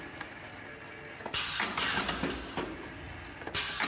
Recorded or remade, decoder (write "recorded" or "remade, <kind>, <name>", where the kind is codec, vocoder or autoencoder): recorded